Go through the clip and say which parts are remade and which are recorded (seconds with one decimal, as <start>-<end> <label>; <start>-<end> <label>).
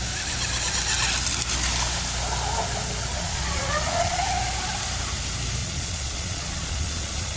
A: 0.0-3.1 recorded; 3.1-4.2 remade; 4.2-5.6 recorded; 5.6-7.4 remade